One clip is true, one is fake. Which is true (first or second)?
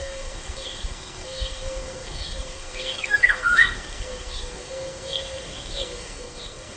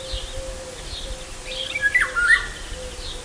second